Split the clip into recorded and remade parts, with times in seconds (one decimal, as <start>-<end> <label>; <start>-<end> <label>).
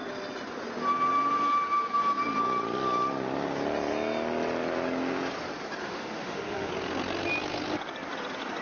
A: 0.0-5.8 recorded; 5.8-6.7 remade; 6.7-8.6 recorded